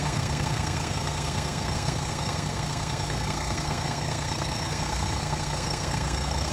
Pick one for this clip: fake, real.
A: fake